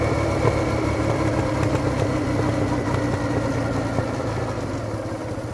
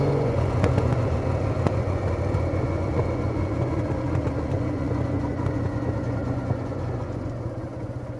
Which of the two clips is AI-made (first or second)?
second